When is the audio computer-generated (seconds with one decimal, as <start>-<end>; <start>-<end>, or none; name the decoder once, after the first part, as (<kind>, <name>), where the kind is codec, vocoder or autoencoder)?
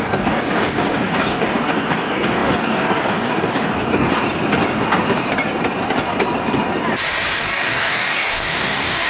0.0-4.1 (codec, DAC); 7.4-9.1